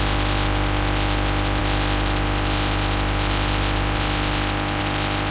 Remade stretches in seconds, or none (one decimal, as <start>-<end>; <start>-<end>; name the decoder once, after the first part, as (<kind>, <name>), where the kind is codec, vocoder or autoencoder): none